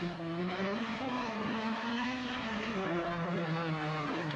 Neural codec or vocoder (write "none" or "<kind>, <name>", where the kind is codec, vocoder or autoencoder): codec, SNAC